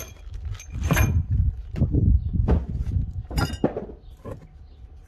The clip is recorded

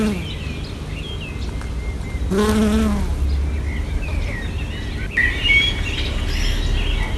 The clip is recorded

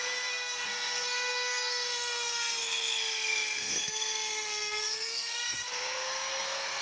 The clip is remade